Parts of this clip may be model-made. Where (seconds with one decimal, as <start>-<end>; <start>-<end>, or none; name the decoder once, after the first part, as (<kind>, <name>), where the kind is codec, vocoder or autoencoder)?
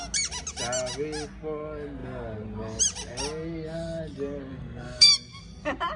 4.5-5.1 (codec, SNAC)